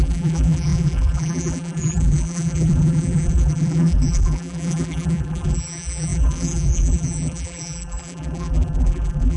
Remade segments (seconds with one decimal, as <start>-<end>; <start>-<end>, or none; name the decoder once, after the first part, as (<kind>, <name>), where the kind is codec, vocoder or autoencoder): 0.0-9.4 (vocoder, BigVGAN v2)